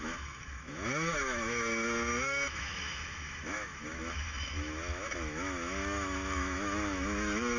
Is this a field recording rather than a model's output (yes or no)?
no